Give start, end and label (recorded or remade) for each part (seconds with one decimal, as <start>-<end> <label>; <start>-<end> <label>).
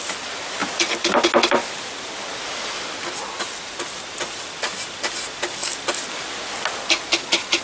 0.0-7.6 recorded